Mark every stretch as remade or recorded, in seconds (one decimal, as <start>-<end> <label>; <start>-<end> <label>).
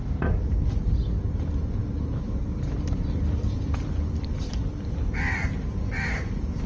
0.0-1.8 recorded; 1.8-5.8 remade; 5.8-6.7 recorded